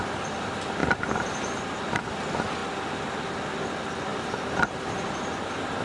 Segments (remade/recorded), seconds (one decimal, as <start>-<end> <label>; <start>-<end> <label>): 0.0-0.8 recorded; 0.8-1.5 remade; 1.5-4.1 recorded; 4.1-5.0 remade; 5.0-5.8 recorded